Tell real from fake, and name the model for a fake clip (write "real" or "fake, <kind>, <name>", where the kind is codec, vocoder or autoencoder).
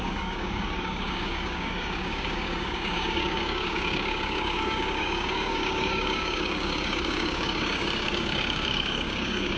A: fake, codec, DAC